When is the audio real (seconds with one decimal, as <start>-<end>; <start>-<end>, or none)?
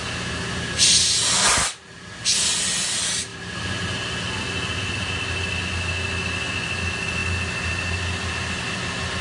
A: 0.0-9.2